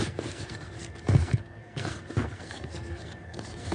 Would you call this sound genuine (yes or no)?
no